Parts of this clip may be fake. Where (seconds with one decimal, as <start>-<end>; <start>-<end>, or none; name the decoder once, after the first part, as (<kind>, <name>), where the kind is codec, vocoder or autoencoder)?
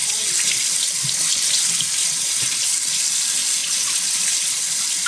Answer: none